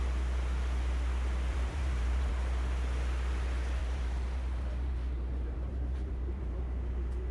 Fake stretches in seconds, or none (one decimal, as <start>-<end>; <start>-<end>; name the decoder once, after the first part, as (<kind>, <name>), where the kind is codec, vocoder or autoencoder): 1.5-2.3 (vocoder, BigVGAN v2); 3.8-6.6